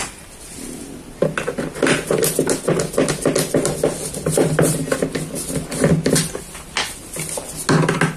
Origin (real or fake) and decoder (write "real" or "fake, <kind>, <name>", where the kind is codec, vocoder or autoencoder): real